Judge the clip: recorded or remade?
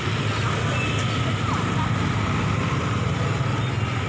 recorded